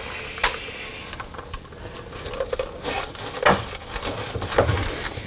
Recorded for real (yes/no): yes